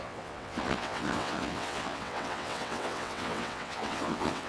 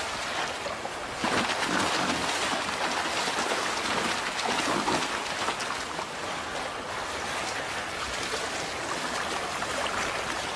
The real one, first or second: second